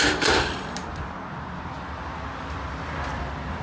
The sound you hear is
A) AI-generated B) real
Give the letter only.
B